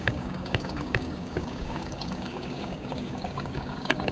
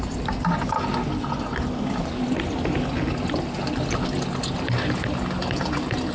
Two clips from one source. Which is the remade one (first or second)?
first